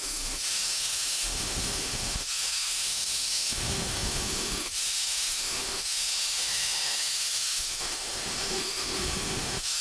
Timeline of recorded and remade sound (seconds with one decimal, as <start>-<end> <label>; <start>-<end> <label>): 0.0-9.8 remade